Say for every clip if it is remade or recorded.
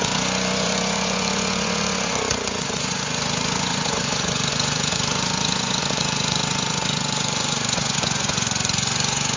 remade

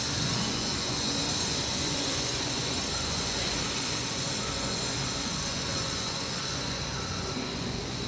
remade